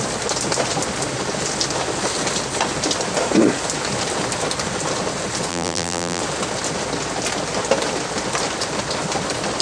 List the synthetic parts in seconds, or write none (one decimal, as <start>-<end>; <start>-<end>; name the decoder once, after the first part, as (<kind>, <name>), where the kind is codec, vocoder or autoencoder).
5.5-6.2 (vocoder, BigVGAN v2)